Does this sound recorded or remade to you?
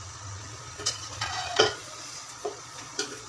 remade